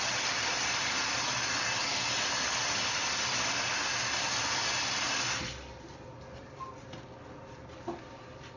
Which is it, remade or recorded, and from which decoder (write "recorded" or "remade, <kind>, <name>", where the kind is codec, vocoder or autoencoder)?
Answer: recorded